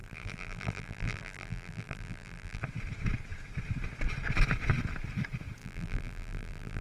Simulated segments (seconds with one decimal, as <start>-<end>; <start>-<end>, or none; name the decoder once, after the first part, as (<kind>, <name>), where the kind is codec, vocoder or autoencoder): 0.0-2.6 (vocoder, BigVGAN v2); 5.6-6.8